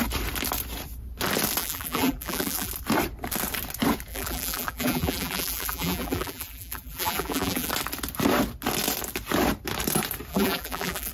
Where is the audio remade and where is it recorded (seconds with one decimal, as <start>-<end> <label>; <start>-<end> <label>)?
0.0-1.6 recorded; 1.6-2.7 remade; 2.7-4.1 recorded; 4.1-7.7 remade; 7.7-10.3 recorded; 10.3-11.1 remade